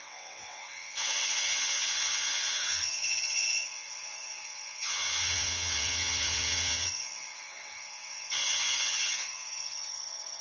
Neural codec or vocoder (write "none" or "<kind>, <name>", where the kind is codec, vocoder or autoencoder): vocoder, WaveNeXt